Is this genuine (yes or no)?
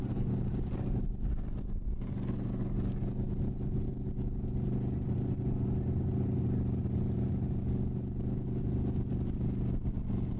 yes